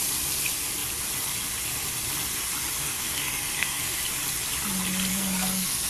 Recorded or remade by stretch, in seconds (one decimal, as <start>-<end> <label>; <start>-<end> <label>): 0.0-2.8 recorded; 2.8-4.0 remade; 4.0-5.1 recorded; 5.1-5.9 remade